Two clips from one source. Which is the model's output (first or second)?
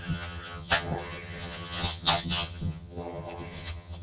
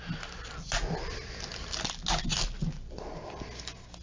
first